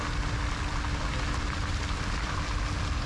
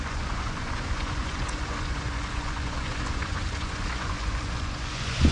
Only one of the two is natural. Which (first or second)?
first